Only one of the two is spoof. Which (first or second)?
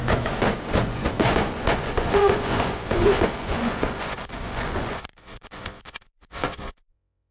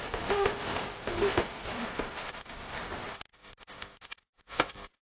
first